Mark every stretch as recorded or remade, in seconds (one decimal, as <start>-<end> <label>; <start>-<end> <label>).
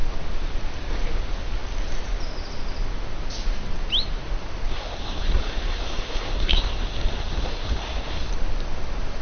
0.0-4.7 recorded; 4.7-8.3 remade; 8.3-9.2 recorded